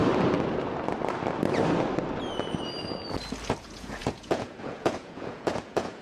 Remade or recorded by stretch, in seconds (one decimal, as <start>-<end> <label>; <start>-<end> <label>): 0.0-3.6 recorded; 3.6-6.0 remade